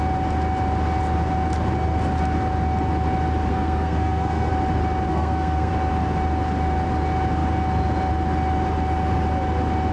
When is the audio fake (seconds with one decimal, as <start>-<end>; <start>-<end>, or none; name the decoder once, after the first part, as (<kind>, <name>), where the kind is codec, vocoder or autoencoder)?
3.5-4.5 (codec, SNAC); 5.1-5.7